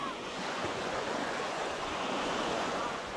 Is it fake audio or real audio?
fake